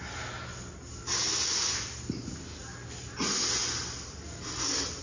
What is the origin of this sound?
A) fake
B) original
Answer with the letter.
B